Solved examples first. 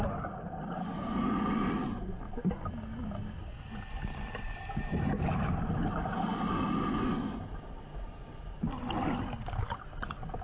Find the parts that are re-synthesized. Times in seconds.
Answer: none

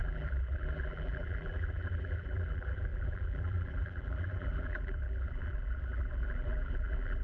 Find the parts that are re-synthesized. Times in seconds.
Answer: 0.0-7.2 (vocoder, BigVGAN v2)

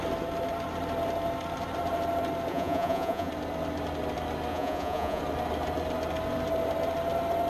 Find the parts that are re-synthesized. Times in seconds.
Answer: 2.5-3.3 (vocoder, Vocos); 4.5-5.2

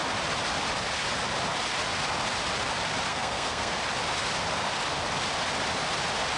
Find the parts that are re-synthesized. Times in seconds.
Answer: 3.1-3.8 (codec, SNAC)